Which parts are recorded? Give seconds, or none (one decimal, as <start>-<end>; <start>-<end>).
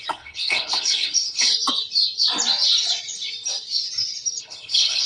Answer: 1.5-4.4